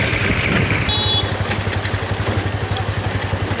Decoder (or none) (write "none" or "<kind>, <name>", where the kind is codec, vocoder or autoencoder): none